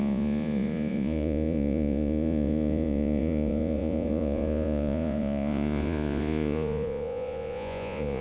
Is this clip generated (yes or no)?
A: yes